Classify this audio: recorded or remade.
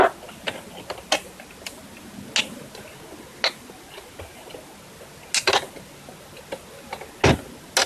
recorded